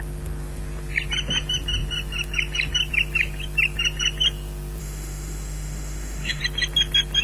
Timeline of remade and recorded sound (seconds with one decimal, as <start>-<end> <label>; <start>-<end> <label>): 0.0-4.8 recorded; 4.8-6.4 remade; 6.4-7.2 recorded